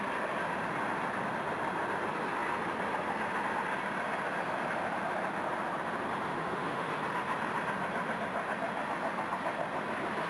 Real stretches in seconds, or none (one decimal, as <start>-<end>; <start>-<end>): 0.0-6.3; 6.9-10.3